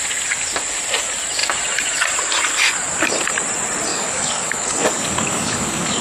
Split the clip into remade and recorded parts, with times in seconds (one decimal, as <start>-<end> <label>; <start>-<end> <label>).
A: 0.0-3.9 recorded; 3.9-6.0 remade

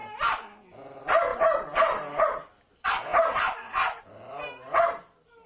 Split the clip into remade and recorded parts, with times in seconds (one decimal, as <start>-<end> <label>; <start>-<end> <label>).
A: 0.0-1.3 recorded; 1.3-2.2 remade; 2.2-5.5 recorded

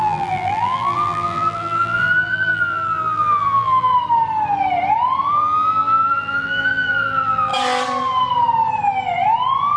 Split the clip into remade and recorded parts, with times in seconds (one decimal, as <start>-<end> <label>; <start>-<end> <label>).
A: 0.0-3.9 remade; 3.9-5.3 recorded; 5.3-7.5 remade; 7.5-9.8 recorded

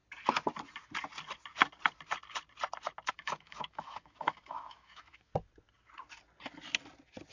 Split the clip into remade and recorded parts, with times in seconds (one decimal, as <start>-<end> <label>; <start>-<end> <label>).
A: 0.0-3.1 recorded; 3.1-5.3 remade; 5.3-7.3 recorded

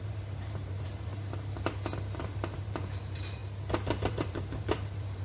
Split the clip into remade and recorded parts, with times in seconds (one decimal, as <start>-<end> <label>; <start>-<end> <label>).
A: 0.0-1.1 remade; 1.1-2.2 recorded; 2.2-3.4 remade; 3.4-4.1 recorded; 4.1-5.2 remade

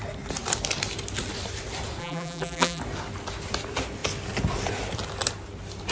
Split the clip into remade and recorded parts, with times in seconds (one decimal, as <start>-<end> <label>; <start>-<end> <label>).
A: 0.0-2.0 recorded; 2.0-2.8 remade; 2.8-5.9 recorded

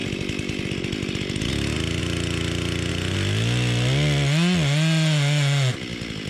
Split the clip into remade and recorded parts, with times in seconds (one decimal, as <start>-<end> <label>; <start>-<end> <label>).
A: 0.0-6.3 recorded